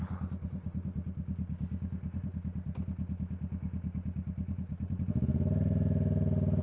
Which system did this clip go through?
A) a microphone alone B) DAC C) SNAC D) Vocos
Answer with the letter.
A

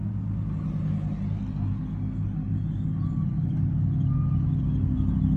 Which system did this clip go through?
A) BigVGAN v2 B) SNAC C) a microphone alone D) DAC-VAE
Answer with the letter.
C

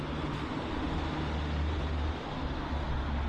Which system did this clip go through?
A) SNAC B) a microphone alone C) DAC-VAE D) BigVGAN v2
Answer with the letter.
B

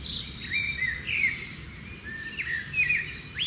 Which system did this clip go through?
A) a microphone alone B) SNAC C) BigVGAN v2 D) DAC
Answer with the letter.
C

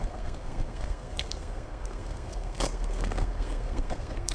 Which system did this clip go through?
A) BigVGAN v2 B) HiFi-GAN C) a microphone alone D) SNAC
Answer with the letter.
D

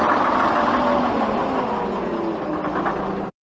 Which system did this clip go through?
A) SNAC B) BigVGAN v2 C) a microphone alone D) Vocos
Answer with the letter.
C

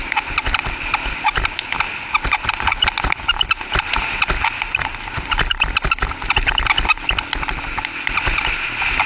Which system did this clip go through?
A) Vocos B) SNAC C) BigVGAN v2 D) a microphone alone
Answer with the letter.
D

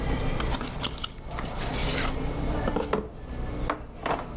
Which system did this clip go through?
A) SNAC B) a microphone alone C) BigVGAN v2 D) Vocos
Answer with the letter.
B